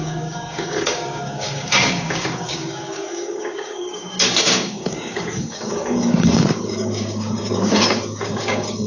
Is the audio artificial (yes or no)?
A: yes